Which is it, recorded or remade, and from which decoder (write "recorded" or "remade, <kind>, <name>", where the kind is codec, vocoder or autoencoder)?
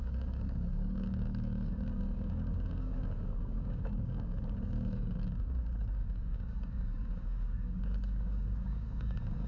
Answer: remade, codec, DAC